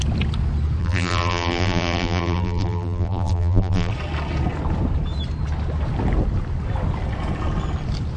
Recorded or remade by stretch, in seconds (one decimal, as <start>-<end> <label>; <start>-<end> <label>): 0.0-0.8 recorded; 0.8-3.9 remade; 3.9-8.2 recorded